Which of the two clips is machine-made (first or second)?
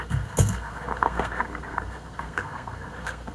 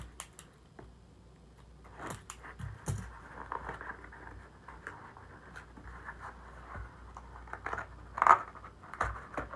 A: first